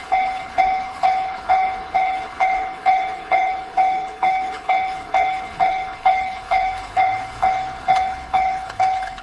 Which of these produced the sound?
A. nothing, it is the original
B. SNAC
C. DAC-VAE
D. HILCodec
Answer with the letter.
D